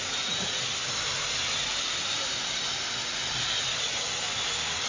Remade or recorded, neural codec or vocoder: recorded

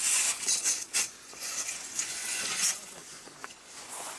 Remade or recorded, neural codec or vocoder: remade, vocoder, Vocos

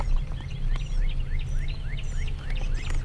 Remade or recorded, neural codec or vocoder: recorded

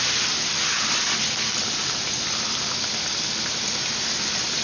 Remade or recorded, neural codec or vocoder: recorded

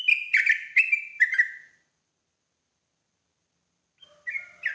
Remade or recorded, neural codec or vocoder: recorded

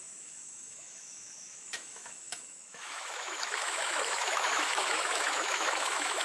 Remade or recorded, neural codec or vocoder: remade, autoencoder, DAC-VAE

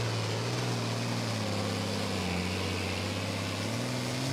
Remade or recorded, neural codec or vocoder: recorded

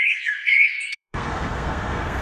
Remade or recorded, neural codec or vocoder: remade, codec, SNAC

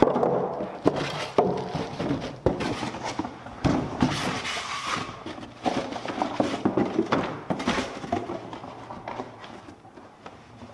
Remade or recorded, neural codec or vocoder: remade, vocoder, BigVGAN v2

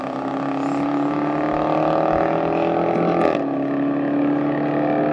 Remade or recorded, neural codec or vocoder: recorded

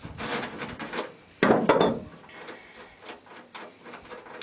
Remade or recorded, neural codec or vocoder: recorded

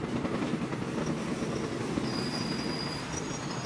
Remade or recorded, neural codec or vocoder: recorded